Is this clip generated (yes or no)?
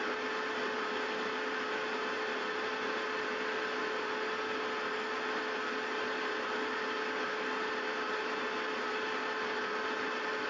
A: no